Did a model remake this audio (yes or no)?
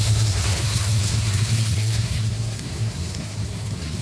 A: yes